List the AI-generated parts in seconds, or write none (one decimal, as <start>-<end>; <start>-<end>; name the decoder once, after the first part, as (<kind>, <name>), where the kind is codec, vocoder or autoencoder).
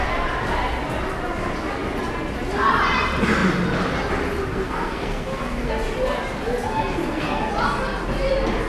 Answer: 4.5-5.7 (codec, SNAC); 6.7-7.5